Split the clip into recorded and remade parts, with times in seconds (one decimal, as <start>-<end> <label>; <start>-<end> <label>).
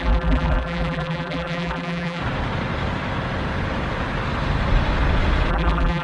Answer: 0.0-2.2 remade; 2.2-5.5 recorded; 5.5-6.0 remade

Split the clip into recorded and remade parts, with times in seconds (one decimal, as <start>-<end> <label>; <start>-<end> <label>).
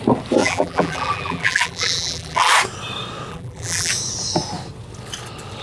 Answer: 0.0-0.4 recorded; 0.4-2.5 remade; 2.5-3.3 recorded; 3.3-3.9 remade; 3.9-5.6 recorded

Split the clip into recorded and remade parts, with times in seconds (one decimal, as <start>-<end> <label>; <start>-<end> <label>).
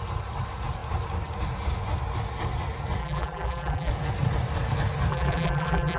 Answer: 0.0-3.0 recorded; 3.0-3.9 remade; 3.9-5.1 recorded; 5.1-6.0 remade